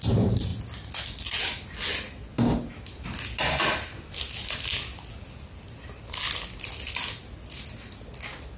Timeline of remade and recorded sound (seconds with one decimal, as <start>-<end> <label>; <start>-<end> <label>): 0.0-8.6 recorded